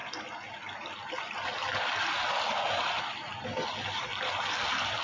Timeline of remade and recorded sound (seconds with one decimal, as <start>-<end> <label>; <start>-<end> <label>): 0.0-5.0 recorded